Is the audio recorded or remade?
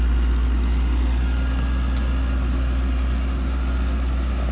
recorded